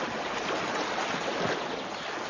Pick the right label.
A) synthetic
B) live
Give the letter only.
B